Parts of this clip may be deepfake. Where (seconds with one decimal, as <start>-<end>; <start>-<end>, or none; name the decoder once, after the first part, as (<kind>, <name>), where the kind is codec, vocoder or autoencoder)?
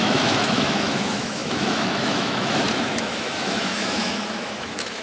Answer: 0.0-5.0 (autoencoder, DAC-VAE)